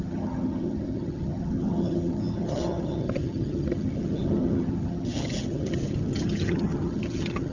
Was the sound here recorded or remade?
remade